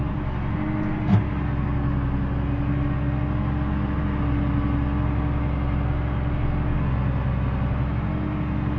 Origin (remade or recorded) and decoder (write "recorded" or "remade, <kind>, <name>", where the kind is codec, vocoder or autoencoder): recorded